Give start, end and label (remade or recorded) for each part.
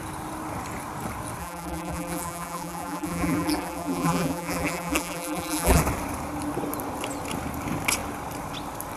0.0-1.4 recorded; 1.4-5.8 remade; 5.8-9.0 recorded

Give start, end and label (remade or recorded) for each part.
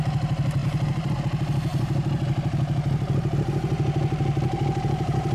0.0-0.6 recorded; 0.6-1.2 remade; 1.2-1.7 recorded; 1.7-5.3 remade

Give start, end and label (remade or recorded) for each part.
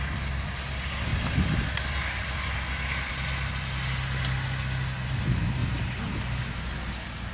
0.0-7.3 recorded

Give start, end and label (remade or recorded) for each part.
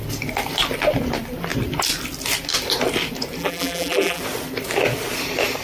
0.0-3.4 recorded; 3.4-4.2 remade; 4.2-5.6 recorded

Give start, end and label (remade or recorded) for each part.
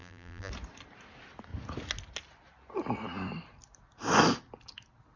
0.0-0.5 remade; 0.5-5.2 recorded